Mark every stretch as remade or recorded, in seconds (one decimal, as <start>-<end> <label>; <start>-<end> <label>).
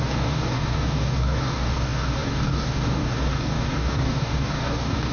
0.0-5.1 remade